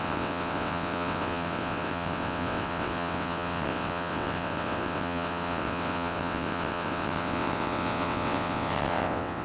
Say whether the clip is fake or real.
fake